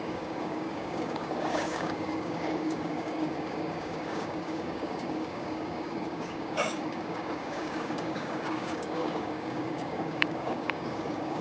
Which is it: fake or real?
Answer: fake